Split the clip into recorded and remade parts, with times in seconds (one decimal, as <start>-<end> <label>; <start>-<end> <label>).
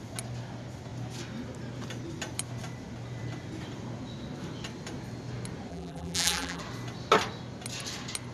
0.0-5.7 recorded; 5.7-6.6 remade; 6.6-8.3 recorded